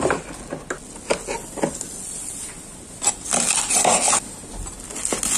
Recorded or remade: recorded